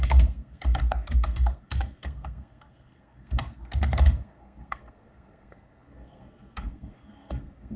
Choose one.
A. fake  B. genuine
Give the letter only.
A